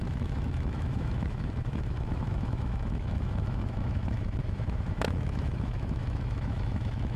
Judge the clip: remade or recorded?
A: remade